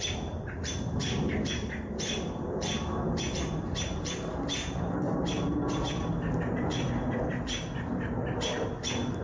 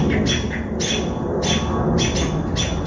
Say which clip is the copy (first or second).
first